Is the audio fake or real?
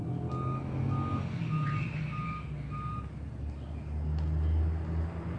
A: real